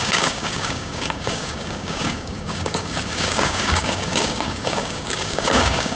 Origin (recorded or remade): remade